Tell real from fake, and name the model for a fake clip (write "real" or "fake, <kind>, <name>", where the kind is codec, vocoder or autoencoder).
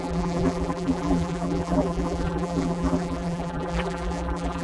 fake, vocoder, BigVGAN v2